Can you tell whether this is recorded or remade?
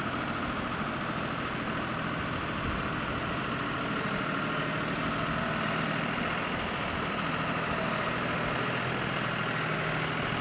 recorded